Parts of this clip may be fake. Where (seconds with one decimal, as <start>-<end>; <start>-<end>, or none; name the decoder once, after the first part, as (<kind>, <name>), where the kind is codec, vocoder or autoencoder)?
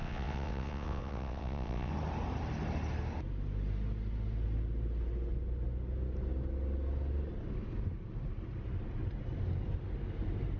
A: 0.0-1.9 (vocoder, WaveNeXt)